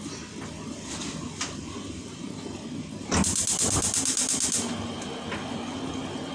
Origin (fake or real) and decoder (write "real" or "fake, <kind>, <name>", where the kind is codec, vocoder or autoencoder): real